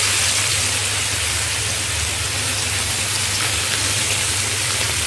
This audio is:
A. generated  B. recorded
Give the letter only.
B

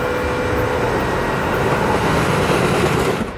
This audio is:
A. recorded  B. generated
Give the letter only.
A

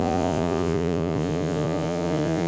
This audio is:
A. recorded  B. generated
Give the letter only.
B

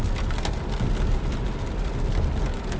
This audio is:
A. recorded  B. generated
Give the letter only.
A